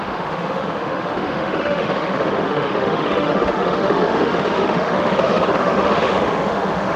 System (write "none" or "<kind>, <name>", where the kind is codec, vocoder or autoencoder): autoencoder, DAC-VAE